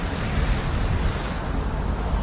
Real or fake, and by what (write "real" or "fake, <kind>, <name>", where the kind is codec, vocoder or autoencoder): real